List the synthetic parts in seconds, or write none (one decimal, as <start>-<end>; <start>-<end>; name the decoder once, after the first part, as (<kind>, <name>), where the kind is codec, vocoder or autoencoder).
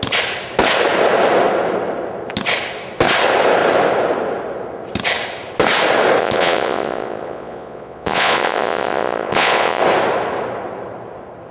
6.2-9.8 (vocoder, Vocos)